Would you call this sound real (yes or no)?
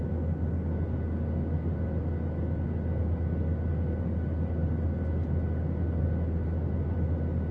yes